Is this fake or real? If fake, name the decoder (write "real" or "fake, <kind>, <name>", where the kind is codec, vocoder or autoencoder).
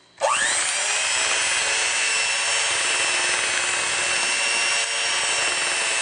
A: real